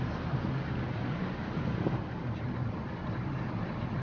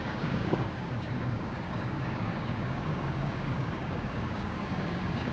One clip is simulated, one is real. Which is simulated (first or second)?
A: second